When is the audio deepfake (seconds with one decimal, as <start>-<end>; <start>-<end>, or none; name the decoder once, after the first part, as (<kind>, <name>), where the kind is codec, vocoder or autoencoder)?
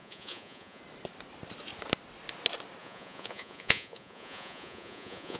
0.0-0.8 (vocoder, Vocos); 2.8-5.4